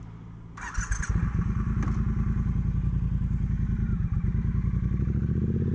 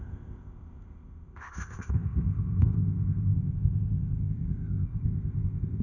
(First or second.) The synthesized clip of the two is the second